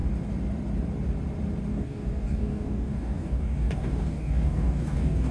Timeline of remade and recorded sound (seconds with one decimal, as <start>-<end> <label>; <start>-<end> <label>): 0.0-1.7 recorded; 1.7-5.3 remade